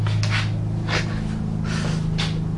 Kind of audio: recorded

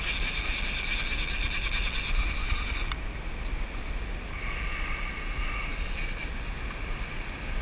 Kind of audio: recorded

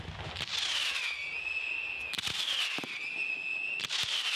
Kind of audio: recorded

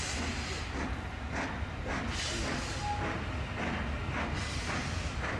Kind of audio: recorded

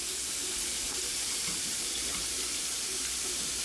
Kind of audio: remade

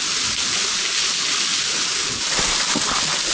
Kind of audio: recorded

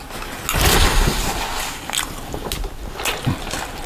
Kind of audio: recorded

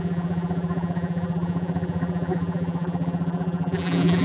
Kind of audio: remade